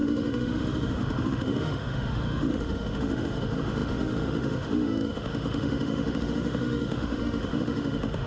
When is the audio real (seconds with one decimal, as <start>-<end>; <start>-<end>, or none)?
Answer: none